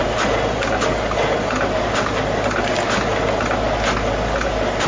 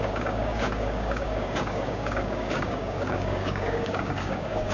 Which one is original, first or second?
first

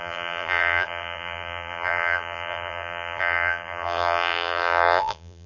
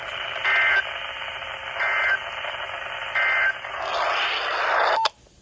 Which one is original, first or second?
second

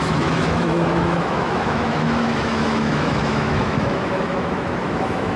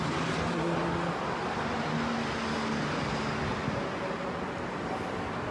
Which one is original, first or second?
second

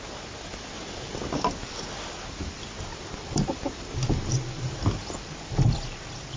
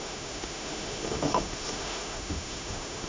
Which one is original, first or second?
first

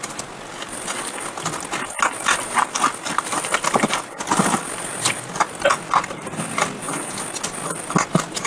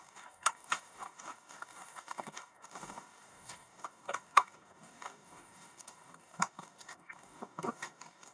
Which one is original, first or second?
first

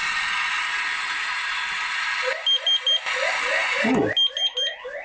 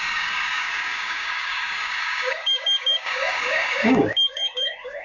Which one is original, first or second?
first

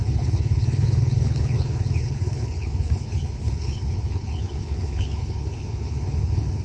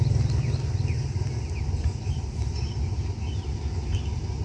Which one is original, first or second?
second